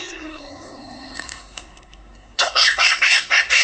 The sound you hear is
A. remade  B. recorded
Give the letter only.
A